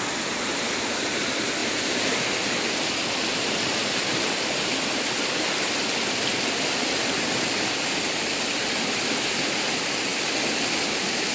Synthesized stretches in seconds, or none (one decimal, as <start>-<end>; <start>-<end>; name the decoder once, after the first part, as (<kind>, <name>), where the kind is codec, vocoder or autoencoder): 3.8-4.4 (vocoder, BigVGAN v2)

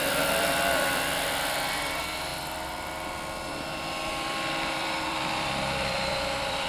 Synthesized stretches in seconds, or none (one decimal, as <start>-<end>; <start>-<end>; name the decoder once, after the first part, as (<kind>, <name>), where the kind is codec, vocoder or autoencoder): 0.0-2.3 (vocoder, BigVGAN v2); 3.7-6.7

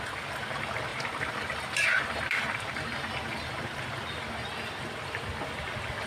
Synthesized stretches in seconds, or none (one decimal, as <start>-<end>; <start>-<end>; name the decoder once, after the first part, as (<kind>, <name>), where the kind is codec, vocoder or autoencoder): 0.9-3.8 (vocoder, BigVGAN v2)